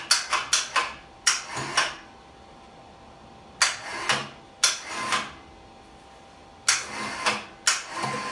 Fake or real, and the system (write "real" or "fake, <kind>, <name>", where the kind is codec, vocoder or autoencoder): real